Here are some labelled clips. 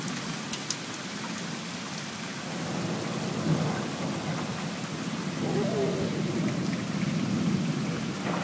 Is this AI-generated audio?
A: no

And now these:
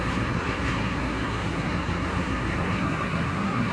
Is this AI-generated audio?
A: yes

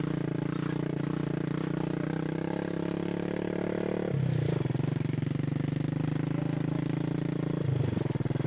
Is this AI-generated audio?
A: no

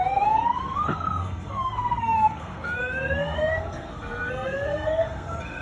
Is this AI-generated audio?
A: yes